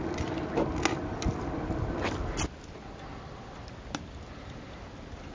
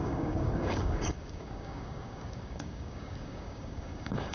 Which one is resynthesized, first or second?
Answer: second